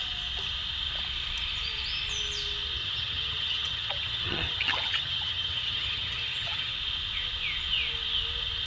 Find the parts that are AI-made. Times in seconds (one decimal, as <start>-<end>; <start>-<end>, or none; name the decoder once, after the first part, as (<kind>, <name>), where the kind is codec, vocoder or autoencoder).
2.8-6.7 (vocoder, HiFi-GAN)